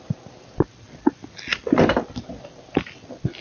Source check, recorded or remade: recorded